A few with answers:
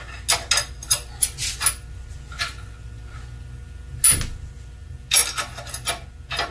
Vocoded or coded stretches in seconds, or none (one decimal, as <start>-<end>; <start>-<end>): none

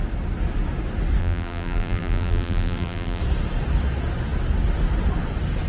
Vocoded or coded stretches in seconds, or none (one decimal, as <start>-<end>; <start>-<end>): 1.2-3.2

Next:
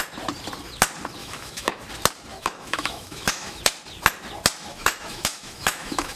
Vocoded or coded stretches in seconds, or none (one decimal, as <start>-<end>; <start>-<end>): 1.2-1.8; 2.3-3.6; 4.7-6.2

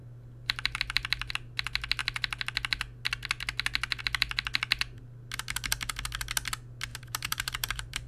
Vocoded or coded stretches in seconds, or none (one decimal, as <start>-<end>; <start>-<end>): 6.9-8.1

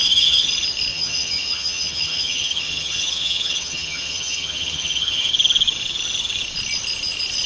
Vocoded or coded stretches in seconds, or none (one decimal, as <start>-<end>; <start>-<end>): 0.0-0.5; 0.9-5.3

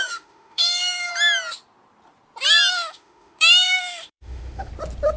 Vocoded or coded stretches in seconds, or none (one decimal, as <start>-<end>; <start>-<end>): 0.0-1.1; 2.7-4.7

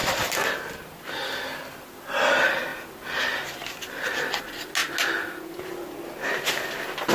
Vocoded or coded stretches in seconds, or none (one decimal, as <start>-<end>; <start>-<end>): none